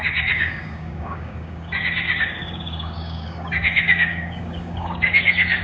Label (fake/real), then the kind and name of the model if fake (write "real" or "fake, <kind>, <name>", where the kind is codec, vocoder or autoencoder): fake, codec, DAC